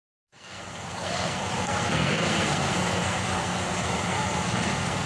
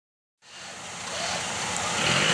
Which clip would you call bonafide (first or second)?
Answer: second